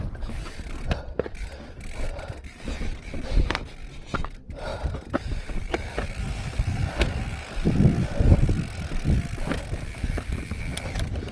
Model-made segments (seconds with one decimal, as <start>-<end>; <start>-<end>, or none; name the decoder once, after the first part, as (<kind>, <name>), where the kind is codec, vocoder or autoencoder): none